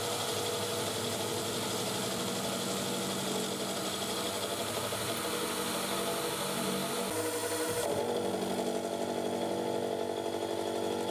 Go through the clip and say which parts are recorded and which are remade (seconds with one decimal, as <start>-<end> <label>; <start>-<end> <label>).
0.0-11.1 recorded